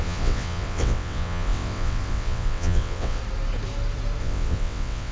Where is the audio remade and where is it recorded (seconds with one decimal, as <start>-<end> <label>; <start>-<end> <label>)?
0.0-3.2 remade; 3.2-4.2 recorded; 4.2-5.1 remade